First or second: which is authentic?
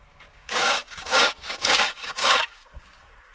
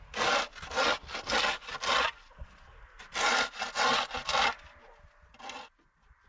second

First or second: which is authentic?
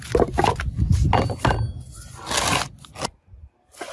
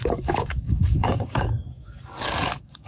first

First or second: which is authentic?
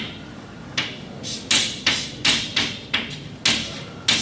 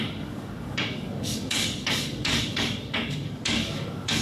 first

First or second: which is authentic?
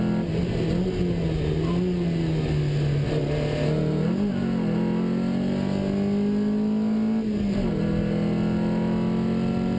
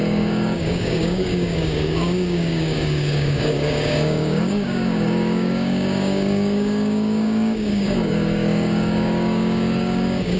first